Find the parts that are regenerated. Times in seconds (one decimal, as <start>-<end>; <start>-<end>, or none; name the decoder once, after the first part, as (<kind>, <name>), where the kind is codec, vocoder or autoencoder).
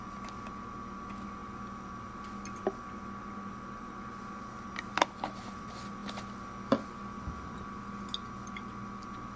none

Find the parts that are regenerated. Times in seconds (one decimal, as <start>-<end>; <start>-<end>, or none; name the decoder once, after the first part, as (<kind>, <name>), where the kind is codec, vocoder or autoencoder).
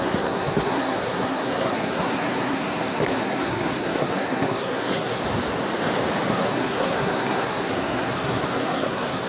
0.0-5.2 (codec, SNAC); 6.3-9.3